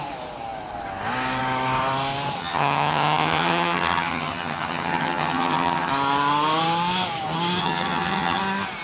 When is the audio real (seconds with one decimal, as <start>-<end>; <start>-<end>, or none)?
0.0-2.4; 5.9-7.6; 8.4-8.8